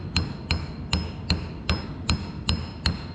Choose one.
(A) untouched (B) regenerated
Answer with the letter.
A